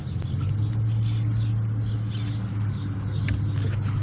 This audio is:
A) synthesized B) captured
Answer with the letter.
B